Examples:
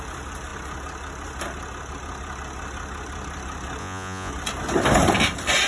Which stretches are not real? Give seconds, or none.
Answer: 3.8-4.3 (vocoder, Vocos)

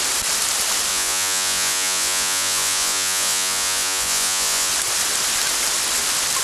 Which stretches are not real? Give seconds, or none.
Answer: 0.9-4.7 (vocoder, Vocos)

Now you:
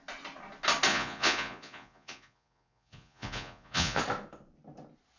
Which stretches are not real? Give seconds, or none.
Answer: 0.9-4.0 (vocoder, Vocos)